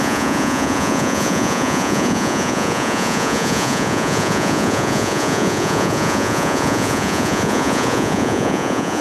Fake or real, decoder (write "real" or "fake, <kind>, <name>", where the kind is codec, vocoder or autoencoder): fake, vocoder, Vocos